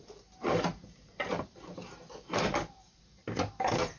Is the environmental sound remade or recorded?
remade